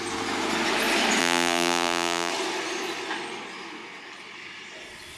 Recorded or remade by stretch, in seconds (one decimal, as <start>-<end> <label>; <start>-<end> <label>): 0.0-1.2 recorded; 1.2-2.3 remade; 2.3-5.2 recorded